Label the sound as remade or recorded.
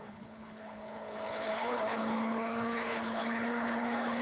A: remade